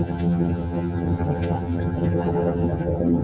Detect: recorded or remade remade